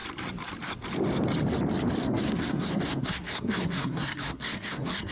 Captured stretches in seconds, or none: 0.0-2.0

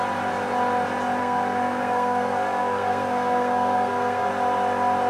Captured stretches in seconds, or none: 0.0-1.2; 4.3-5.1

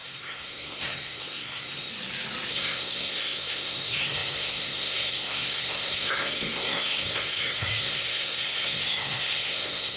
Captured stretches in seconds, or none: 1.9-2.5